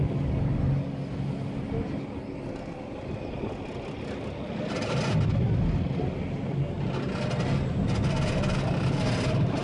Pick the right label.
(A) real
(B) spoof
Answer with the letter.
A